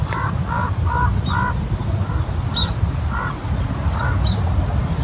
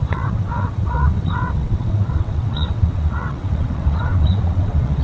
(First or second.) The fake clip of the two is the second